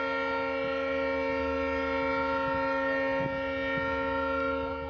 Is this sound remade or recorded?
recorded